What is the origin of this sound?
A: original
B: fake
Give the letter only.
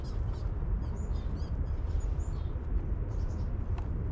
A